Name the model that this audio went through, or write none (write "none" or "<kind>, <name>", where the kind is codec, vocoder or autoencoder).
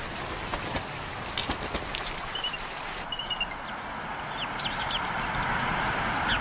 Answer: none